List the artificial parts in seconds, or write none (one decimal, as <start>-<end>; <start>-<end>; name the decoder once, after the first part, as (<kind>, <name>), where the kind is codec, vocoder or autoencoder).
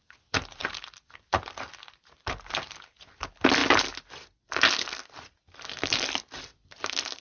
0.0-3.6 (vocoder, BigVGAN v2); 5.4-7.2